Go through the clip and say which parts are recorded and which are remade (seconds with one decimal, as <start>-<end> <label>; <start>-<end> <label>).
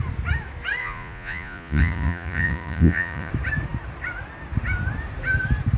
0.0-0.8 recorded; 0.8-3.3 remade; 3.3-5.8 recorded